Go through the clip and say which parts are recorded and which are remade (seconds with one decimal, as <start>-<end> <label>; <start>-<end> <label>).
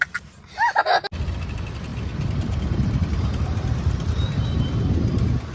0.0-1.9 recorded; 1.9-4.6 remade; 4.6-5.5 recorded